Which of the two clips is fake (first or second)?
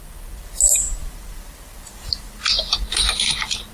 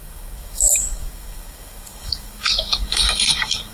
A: second